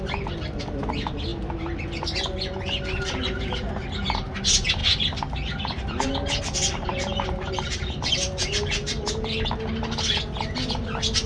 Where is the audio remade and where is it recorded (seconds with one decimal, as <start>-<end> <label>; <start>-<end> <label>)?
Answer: 0.0-6.9 recorded; 6.9-8.3 remade; 8.3-11.3 recorded